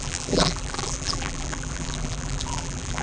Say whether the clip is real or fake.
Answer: fake